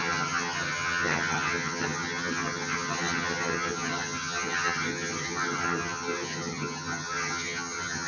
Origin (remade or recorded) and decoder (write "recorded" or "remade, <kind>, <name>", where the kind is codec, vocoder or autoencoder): remade, vocoder, HiFi-GAN